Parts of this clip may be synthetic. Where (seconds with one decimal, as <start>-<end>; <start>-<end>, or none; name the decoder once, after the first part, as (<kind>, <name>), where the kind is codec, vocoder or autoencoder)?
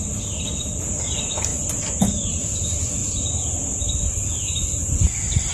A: none